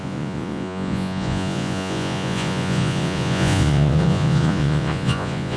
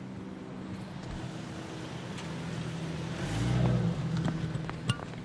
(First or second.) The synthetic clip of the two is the first